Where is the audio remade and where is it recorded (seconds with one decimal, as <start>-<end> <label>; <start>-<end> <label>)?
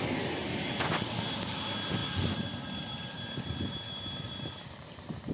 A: 0.0-2.0 recorded; 2.0-5.3 remade